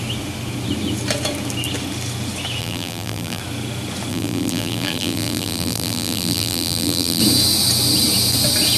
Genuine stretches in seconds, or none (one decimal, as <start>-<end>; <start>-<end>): 0.0-2.6; 3.4-4.1; 7.2-8.8